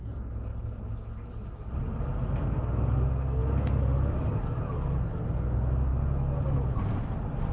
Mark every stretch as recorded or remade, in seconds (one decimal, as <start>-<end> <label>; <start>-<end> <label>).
0.0-7.5 recorded